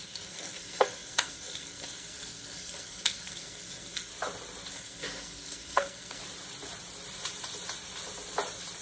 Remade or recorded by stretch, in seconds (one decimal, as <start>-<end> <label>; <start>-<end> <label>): 0.0-4.1 remade; 4.1-4.7 recorded; 4.7-6.2 remade; 6.2-8.8 recorded